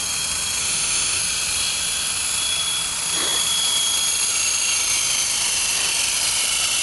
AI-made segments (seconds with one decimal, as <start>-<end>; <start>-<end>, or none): 0.6-1.2